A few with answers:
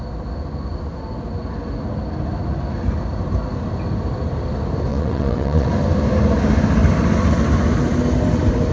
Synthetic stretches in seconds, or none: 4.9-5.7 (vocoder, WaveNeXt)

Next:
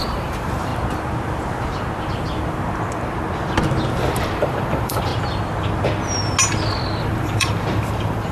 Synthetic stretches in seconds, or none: 0.0-0.7 (vocoder, BigVGAN v2); 4.0-5.1; 7.0-8.3

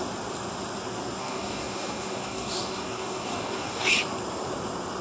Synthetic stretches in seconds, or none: 1.2-3.9 (codec, DAC)

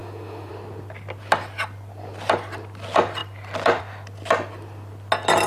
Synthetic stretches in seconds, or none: 0.0-0.5 (autoencoder, DAC-VAE)

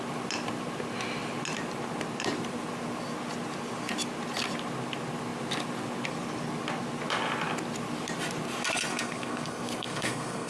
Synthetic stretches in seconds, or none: 8.9-10.5 (codec, SNAC)

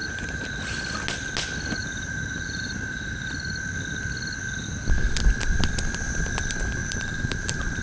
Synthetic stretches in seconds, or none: 0.0-0.6 (vocoder, BigVGAN v2); 1.8-3.3; 6.8-7.8

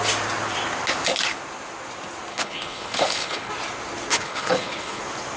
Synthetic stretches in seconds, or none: 2.3-3.5 (codec, HILCodec); 4.1-5.0

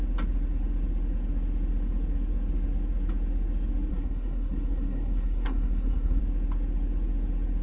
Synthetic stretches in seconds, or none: 3.9-6.2 (codec, SNAC)